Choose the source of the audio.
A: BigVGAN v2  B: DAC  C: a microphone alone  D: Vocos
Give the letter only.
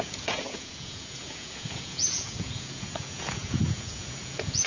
D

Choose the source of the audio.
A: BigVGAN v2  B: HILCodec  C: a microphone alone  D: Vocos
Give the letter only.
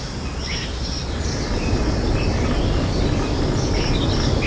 C